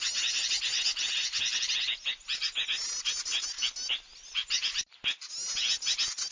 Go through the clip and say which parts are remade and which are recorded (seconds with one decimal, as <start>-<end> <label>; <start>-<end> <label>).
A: 0.0-4.1 recorded; 4.1-5.0 remade; 5.0-6.3 recorded